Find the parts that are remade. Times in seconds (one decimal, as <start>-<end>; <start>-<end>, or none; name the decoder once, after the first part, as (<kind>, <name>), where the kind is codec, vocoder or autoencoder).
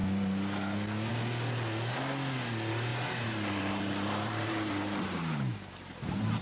2.9-6.4 (vocoder, BigVGAN v2)